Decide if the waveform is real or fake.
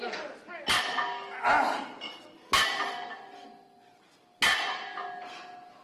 real